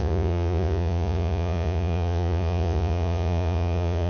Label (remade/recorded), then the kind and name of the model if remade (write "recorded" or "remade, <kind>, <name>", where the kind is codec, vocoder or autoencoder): remade, vocoder, Vocos